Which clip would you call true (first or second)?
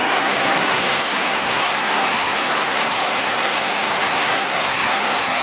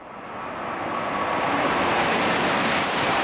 second